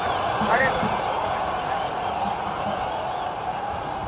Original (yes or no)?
no